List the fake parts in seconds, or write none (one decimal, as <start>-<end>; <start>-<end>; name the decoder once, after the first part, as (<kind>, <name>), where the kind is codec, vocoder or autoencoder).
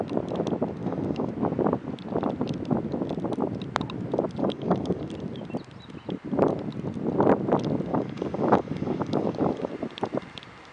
0.8-1.3 (codec, DAC); 4.4-5.1; 7.9-9.7